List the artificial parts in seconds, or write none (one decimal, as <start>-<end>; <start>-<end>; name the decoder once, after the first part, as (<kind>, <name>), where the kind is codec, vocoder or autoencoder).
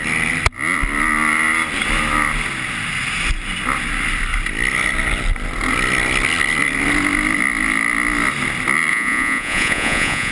8.9-10.3 (vocoder, Vocos)